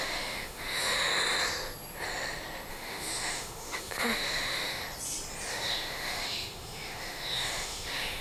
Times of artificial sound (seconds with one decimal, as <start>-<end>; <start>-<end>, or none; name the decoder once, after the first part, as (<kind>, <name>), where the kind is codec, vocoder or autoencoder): 0.0-1.1 (autoencoder, DAC-VAE); 2.7-4.8; 5.5-8.2